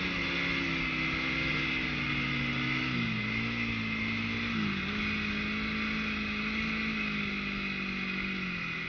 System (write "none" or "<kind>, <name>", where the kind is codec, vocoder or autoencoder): none